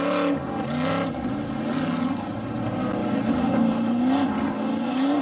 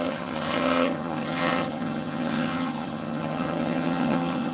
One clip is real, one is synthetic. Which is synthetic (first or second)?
second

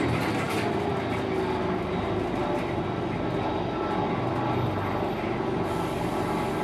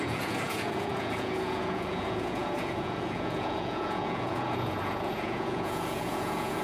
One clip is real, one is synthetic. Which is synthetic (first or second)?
second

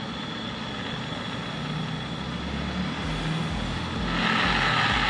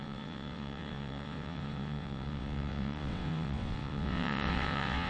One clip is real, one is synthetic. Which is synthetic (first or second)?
second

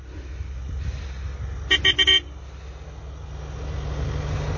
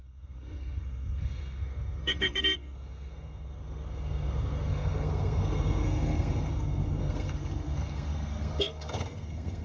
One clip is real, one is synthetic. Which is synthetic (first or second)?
second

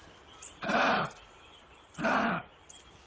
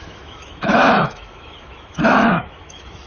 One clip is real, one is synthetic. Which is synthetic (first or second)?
second